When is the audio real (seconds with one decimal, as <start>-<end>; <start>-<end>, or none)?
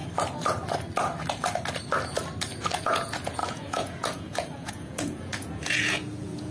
0.0-2.8